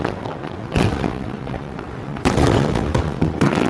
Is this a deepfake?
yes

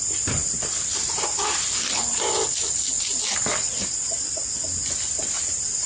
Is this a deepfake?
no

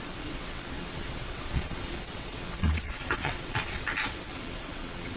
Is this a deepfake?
yes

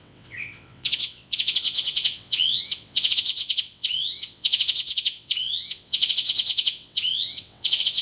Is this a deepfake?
yes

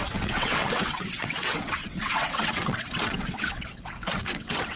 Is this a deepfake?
yes